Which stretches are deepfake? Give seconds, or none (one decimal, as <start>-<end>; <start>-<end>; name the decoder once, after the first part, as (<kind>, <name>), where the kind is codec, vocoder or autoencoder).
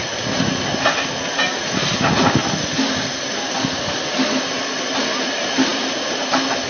2.4-5.3 (vocoder, BigVGAN v2); 5.7-6.2